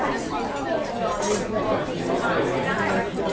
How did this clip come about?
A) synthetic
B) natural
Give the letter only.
B